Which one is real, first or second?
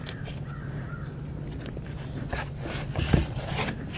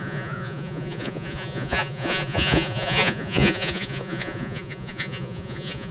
first